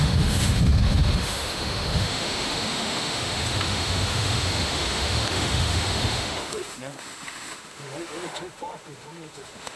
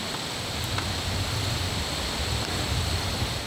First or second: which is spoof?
first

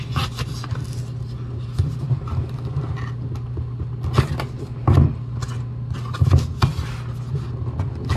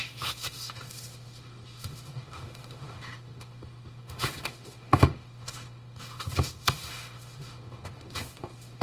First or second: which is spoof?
second